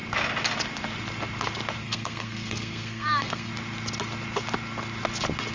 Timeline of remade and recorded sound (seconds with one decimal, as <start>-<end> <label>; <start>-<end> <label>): 0.0-1.8 recorded; 1.8-3.5 remade; 3.5-5.5 recorded